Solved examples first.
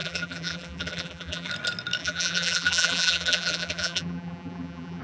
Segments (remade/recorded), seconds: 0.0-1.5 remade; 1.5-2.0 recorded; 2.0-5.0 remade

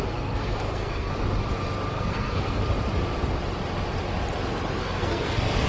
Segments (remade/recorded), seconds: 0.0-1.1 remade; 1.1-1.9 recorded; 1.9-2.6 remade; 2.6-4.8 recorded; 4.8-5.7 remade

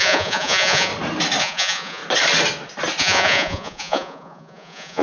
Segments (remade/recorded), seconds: 0.0-0.9 remade; 0.9-1.4 recorded; 1.4-2.0 remade; 2.0-3.0 recorded; 3.0-5.0 remade